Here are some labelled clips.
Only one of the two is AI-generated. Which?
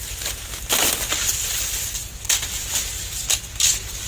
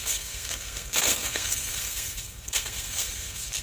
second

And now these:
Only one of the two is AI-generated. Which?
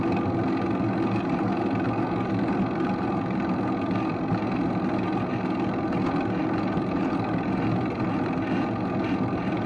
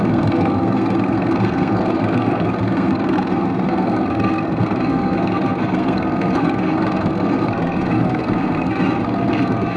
second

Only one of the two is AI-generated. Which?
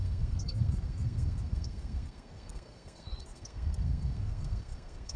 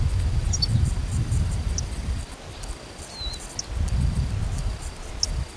first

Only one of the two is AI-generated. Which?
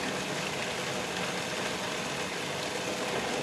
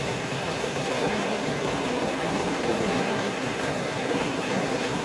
second